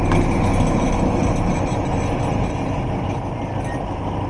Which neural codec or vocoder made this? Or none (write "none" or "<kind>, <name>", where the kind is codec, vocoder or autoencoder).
none